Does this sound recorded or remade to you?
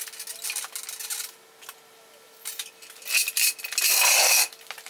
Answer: recorded